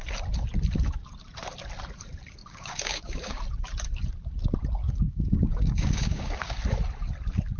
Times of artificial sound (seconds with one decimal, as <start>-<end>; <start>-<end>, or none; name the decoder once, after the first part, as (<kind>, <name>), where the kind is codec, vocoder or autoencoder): 2.4-3.4 (codec, DAC); 4.8-6.6